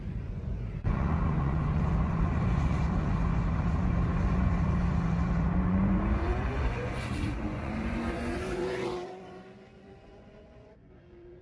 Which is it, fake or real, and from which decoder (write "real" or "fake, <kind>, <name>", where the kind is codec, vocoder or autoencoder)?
fake, vocoder, Vocos